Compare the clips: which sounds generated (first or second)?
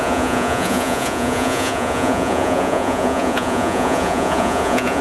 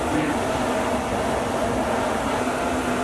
first